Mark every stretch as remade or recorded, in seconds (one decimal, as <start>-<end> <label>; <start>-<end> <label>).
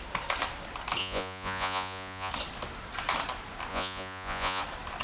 0.0-1.0 recorded; 1.0-2.3 remade; 2.3-3.7 recorded; 3.7-4.6 remade; 4.6-5.0 recorded